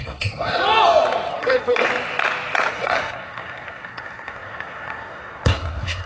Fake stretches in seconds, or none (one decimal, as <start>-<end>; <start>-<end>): 0.0-0.6; 1.3-1.9; 2.7-6.1